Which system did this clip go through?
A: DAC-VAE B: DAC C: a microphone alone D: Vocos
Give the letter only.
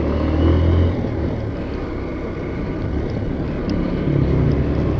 C